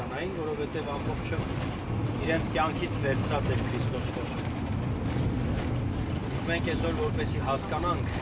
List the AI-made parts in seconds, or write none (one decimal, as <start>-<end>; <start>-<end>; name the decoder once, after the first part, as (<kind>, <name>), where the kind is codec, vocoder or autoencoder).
none